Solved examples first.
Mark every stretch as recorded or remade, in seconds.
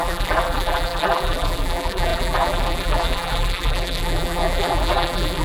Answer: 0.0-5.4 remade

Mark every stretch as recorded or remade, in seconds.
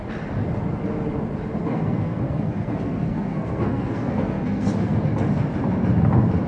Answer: 0.0-1.6 recorded; 1.6-5.0 remade; 5.0-6.5 recorded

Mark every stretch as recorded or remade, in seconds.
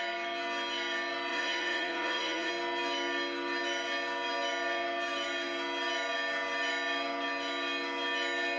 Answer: 0.0-1.3 recorded; 1.3-2.5 remade; 2.5-8.6 recorded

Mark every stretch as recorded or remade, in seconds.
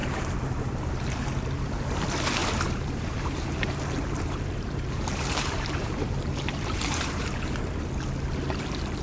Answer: 0.0-1.2 remade; 1.2-2.4 recorded; 2.4-7.6 remade; 7.6-9.0 recorded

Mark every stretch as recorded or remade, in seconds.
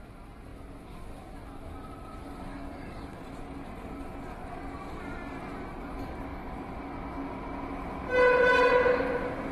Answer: 0.0-2.5 recorded; 2.5-3.3 remade; 3.3-9.5 recorded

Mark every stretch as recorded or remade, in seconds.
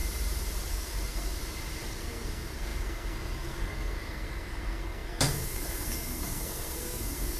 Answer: 0.0-0.7 recorded; 0.7-1.4 remade; 1.4-1.9 recorded; 1.9-7.4 remade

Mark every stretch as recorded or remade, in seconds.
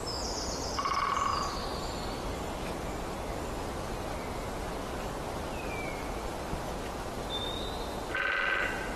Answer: 0.0-1.3 recorded; 1.3-3.9 remade; 3.9-9.0 recorded